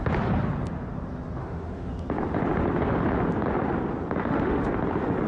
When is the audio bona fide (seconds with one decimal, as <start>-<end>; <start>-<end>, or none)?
0.0-1.4; 1.9-4.2; 4.7-5.3